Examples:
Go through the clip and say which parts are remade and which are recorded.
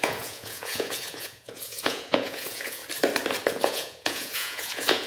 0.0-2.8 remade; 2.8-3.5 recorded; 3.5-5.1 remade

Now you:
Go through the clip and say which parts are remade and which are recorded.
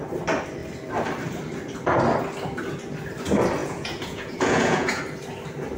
0.0-3.6 recorded; 3.6-5.0 remade; 5.0-5.8 recorded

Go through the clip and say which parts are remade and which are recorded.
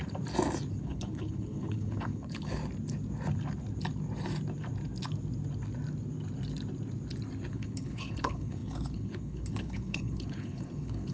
0.0-0.8 recorded; 0.8-2.6 remade; 2.6-7.5 recorded; 7.5-11.1 remade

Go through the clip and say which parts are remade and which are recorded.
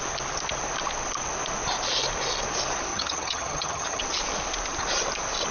0.0-2.9 recorded; 2.9-4.0 remade; 4.0-5.5 recorded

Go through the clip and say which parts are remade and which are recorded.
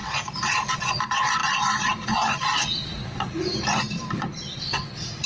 0.0-0.7 remade; 0.7-1.4 recorded; 1.4-4.6 remade; 4.6-5.3 recorded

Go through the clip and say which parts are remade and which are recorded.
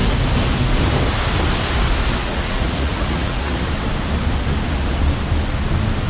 0.0-2.2 recorded; 2.2-3.7 remade; 3.7-6.1 recorded